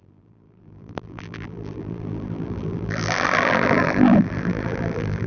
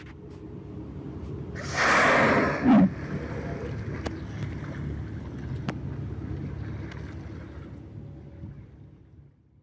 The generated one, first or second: first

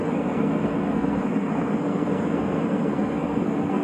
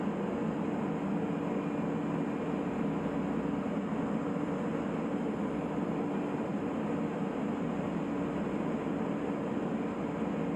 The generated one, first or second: first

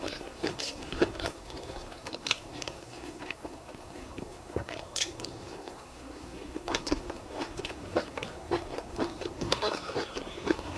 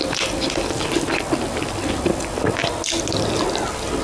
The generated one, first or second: first